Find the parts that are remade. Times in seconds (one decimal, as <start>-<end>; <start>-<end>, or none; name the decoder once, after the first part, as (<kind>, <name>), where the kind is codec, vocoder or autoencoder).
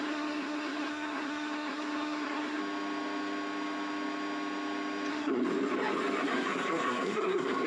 0.0-2.6 (codec, SNAC); 5.1-5.5; 6.2-7.7